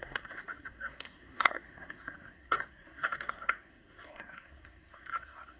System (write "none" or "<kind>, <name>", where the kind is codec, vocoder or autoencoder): codec, SNAC